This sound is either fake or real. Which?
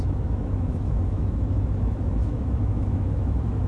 fake